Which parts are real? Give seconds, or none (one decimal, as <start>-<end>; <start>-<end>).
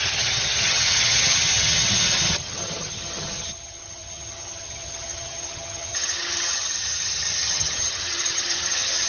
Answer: none